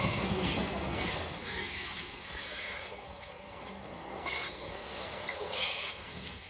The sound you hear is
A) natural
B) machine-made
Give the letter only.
B